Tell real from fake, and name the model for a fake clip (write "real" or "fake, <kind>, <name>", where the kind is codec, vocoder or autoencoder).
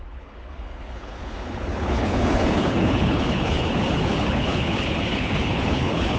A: fake, codec, HILCodec